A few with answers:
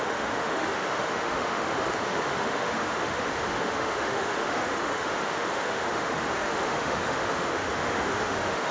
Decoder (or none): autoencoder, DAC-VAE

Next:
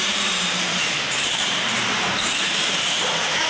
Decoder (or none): vocoder, BigVGAN v2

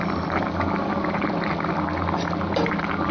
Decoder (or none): none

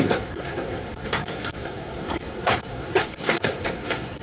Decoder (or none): codec, SNAC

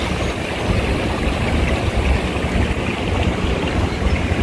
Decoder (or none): none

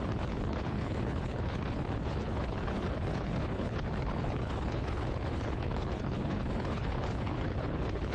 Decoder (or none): codec, HILCodec